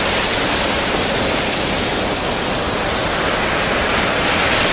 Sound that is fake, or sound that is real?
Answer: real